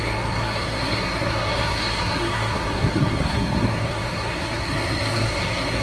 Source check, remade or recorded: remade